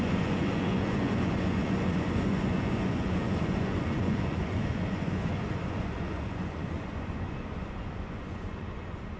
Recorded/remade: remade